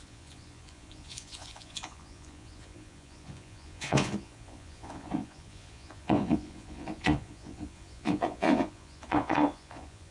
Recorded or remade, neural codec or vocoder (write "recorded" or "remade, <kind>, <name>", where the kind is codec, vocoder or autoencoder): remade, vocoder, Vocos